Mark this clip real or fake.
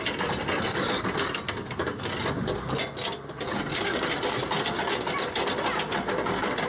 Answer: real